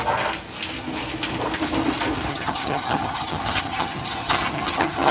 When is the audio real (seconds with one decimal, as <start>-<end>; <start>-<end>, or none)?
0.0-2.3